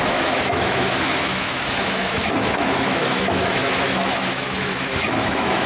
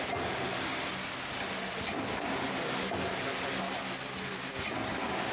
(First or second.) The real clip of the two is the second